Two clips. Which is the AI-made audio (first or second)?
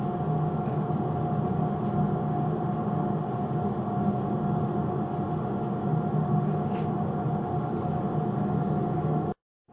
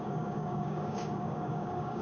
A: second